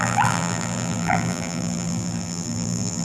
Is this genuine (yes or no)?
no